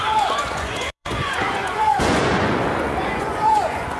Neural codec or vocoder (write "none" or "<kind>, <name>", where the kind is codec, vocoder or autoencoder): vocoder, Vocos